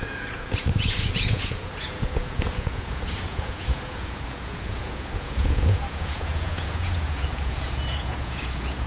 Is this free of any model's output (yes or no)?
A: no